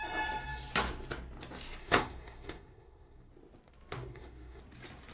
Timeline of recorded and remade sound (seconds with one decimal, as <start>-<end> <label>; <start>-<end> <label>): 0.0-1.8 recorded; 1.8-3.3 remade; 3.3-4.1 recorded; 4.1-4.6 remade; 4.6-5.1 recorded